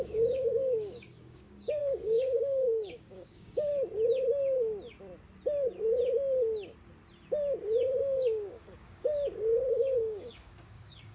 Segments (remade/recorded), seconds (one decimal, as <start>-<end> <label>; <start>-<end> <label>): 0.0-3.7 remade; 3.7-8.0 recorded; 8.0-9.1 remade; 9.1-9.7 recorded; 9.7-11.1 remade